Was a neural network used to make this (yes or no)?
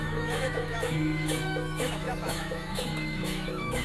yes